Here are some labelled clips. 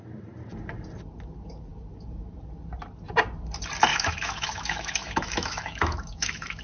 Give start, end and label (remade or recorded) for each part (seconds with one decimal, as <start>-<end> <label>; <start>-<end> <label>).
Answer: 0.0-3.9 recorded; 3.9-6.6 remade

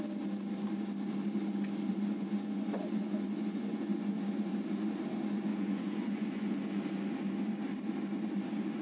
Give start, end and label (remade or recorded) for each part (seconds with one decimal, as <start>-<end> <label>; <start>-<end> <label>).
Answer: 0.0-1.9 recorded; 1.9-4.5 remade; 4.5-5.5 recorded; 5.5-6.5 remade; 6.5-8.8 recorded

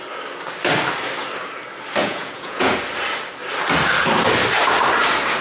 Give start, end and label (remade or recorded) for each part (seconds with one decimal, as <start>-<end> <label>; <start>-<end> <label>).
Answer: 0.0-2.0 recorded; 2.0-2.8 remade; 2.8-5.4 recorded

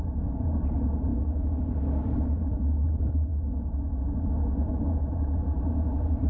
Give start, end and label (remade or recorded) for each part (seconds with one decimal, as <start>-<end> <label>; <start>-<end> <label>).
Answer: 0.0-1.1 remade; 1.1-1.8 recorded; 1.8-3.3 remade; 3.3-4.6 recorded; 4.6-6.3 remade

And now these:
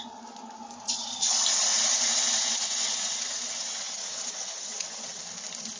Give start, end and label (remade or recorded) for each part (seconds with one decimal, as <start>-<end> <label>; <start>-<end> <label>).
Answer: 0.0-1.7 recorded; 1.7-5.2 remade; 5.2-5.8 recorded

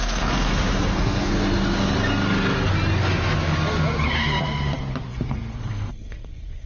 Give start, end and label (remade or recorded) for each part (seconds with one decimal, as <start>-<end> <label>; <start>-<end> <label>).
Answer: 0.0-1.3 remade; 1.3-5.1 recorded; 5.1-6.7 remade